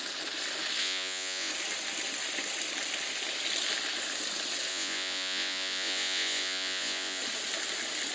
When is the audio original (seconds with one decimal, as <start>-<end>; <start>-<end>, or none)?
0.0-0.8; 1.5-4.7; 7.2-8.1